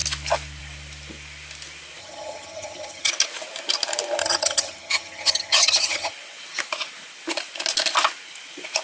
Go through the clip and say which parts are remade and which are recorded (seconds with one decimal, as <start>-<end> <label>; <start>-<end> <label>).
0.0-2.0 recorded; 2.0-3.1 remade; 3.1-4.2 recorded; 4.2-6.1 remade; 6.1-8.8 recorded